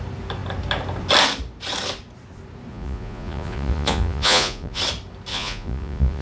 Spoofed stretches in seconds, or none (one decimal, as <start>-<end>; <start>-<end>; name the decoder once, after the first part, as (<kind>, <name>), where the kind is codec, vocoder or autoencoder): 2.7-4.8 (vocoder, Vocos); 5.3-6.2

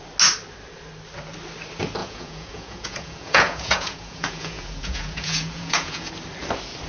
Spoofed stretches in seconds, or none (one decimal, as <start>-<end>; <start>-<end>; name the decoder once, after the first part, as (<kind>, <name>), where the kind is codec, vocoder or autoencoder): 2.0-6.1 (vocoder, Vocos)

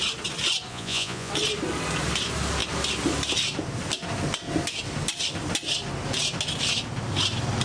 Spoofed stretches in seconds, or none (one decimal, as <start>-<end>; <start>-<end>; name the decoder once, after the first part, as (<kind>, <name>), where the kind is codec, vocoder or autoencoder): 0.7-1.3 (vocoder, Vocos)

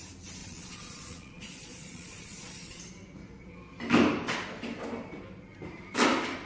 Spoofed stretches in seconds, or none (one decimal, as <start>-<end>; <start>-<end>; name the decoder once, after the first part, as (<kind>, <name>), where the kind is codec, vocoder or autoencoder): 0.4-2.8 (vocoder, Vocos)

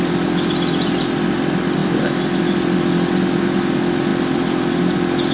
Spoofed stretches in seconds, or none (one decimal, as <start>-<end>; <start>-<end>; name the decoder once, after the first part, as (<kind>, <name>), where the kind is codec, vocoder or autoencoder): none

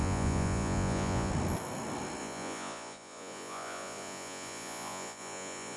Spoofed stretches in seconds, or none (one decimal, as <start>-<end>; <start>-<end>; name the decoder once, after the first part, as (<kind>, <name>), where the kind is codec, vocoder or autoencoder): 0.0-1.3 (vocoder, Vocos); 2.2-5.8

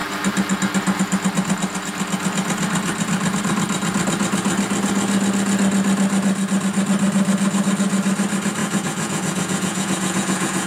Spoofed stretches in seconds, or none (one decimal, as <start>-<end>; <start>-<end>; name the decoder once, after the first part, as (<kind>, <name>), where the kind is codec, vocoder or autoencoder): 8.6-10.7 (vocoder, Vocos)

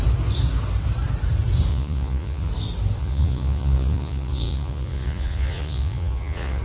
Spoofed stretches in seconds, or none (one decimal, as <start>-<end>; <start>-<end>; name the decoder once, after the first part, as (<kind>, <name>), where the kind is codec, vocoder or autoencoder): 1.7-2.5 (vocoder, Vocos); 3.0-6.6